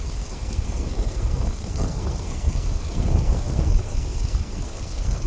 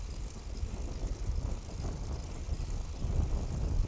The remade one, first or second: first